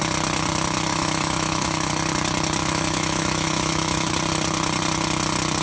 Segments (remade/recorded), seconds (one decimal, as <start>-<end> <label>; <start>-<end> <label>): 0.0-0.9 recorded; 0.9-1.9 remade; 1.9-2.6 recorded; 2.6-4.1 remade; 4.1-5.6 recorded